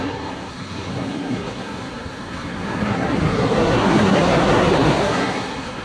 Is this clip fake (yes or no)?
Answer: yes